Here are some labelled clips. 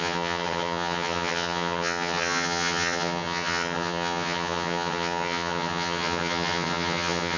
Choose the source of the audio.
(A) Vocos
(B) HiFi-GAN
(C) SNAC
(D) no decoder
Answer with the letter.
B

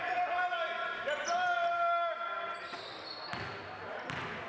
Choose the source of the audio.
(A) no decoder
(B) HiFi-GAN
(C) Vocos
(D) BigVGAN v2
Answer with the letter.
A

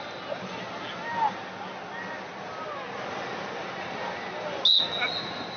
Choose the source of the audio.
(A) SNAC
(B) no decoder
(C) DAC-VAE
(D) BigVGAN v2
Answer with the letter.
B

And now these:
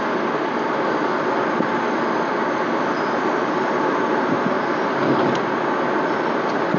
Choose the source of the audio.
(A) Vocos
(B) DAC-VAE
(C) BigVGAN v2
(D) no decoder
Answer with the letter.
D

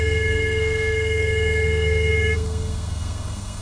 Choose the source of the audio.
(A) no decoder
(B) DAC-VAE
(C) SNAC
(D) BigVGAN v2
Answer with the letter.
C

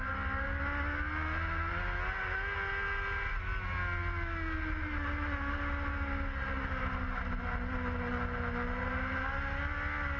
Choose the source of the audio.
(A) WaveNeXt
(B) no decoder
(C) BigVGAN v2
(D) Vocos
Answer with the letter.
B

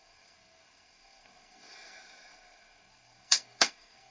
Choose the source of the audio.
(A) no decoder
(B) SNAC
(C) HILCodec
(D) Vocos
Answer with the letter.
B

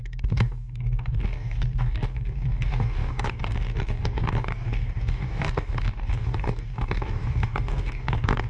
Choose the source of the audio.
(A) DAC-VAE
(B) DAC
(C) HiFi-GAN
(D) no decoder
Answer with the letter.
B